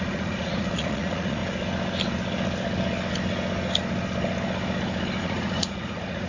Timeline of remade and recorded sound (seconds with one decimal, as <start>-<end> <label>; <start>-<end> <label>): 0.0-1.4 remade; 1.4-5.2 recorded; 5.2-6.3 remade